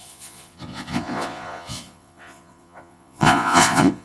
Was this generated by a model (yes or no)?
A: yes